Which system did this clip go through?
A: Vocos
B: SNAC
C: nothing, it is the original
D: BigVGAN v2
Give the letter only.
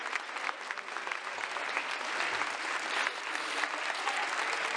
C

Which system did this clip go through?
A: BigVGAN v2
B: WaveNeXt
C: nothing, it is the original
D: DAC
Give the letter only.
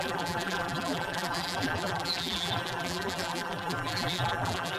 A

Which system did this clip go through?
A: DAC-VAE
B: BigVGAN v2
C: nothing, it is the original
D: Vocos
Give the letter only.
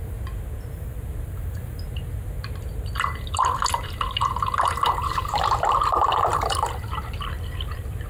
B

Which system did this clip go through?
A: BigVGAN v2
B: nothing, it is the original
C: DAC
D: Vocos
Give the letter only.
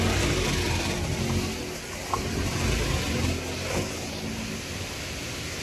B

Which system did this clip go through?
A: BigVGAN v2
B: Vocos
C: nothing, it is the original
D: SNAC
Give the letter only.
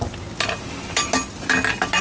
C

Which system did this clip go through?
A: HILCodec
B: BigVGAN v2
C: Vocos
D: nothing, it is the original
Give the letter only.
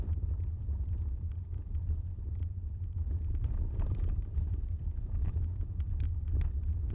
B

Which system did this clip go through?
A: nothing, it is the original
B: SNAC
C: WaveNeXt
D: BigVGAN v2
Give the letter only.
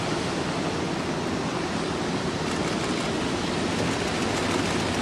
A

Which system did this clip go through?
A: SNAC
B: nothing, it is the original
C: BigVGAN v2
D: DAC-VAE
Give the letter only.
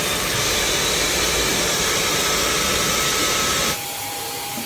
C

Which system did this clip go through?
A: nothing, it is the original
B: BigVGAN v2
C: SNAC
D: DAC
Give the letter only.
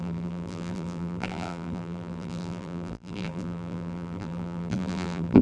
B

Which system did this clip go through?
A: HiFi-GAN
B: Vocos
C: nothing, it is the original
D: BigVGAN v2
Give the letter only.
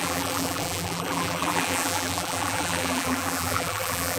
D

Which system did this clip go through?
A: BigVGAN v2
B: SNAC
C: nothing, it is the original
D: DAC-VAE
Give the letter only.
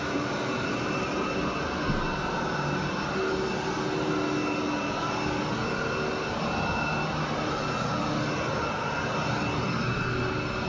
C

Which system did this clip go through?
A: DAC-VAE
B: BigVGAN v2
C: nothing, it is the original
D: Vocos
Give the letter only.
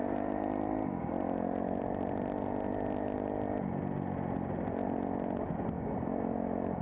C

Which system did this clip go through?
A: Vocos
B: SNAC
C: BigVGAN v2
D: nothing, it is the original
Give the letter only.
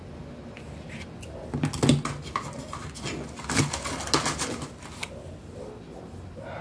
D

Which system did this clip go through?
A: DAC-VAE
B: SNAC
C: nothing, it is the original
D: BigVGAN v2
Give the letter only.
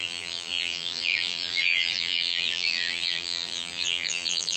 D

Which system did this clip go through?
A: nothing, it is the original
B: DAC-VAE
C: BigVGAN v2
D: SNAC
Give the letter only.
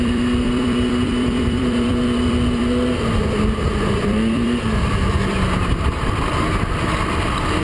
C